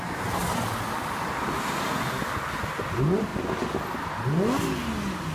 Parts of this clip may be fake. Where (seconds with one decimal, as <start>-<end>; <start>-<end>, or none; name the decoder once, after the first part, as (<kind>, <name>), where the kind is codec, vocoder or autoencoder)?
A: none

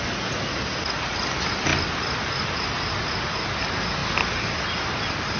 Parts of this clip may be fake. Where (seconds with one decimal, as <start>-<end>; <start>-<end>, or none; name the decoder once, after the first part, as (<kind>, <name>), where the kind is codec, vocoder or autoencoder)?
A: none

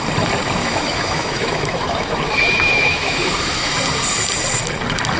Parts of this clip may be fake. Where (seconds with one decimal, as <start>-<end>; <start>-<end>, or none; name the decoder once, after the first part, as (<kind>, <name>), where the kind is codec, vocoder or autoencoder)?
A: 0.6-3.7 (autoencoder, DAC-VAE)

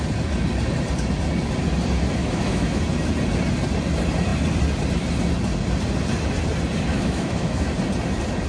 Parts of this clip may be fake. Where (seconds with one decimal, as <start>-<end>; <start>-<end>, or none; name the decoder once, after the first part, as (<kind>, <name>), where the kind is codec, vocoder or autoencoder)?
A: 2.2-2.8 (autoencoder, DAC-VAE); 6.9-7.6

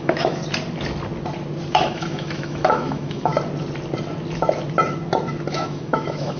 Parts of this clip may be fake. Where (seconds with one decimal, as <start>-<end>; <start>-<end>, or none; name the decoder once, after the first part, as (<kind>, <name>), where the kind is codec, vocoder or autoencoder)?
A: 0.0-0.4 (autoencoder, DAC-VAE); 1.7-3.3; 5.5-6.4

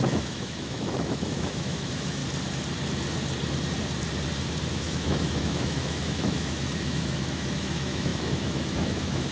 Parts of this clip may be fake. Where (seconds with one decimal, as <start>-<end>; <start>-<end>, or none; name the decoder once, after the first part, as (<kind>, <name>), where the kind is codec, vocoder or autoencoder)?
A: 0.0-2.2 (autoencoder, DAC-VAE); 4.7-9.3

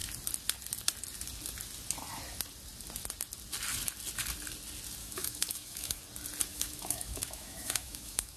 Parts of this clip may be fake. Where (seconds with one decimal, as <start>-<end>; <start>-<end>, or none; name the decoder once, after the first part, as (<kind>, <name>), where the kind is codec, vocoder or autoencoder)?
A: 5.0-6.0 (autoencoder, DAC-VAE); 6.5-8.4

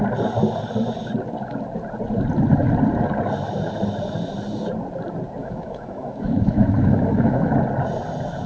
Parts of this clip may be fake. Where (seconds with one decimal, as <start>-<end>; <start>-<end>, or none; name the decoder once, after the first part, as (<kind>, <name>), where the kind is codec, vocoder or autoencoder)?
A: 5.4-7.5 (autoencoder, DAC-VAE)